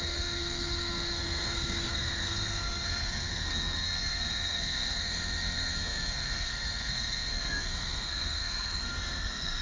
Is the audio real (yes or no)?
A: no